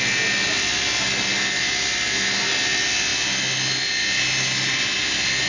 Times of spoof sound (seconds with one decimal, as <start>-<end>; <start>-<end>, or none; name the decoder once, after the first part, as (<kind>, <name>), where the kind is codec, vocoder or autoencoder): none